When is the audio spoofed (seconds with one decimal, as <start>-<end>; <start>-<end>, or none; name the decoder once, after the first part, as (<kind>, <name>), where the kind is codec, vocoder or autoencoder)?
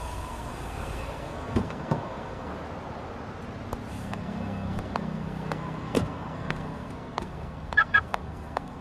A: 0.0-2.5 (codec, SNAC); 3.9-8.8